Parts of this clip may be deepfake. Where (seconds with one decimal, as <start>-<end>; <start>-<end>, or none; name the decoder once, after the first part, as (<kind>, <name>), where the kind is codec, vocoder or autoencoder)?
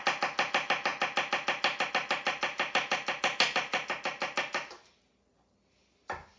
none